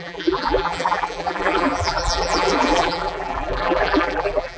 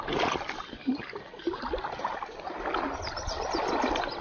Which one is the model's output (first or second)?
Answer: first